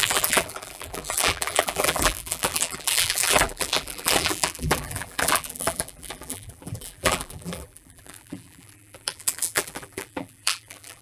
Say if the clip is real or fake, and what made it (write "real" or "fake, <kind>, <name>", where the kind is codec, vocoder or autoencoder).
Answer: fake, vocoder, BigVGAN v2